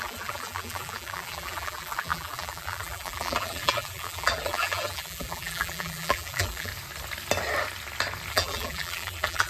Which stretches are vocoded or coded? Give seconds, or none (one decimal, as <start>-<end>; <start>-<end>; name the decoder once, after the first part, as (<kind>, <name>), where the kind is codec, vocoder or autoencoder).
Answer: 0.0-6.7 (vocoder, BigVGAN v2); 8.3-9.5